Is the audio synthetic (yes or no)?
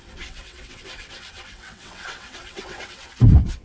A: yes